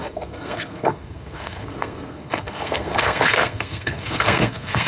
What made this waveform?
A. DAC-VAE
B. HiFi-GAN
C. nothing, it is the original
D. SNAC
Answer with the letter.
D